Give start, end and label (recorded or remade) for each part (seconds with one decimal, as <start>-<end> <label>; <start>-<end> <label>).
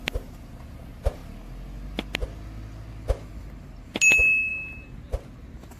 0.0-5.8 recorded